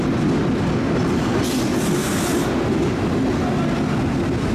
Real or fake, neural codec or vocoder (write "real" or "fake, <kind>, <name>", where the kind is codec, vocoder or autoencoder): real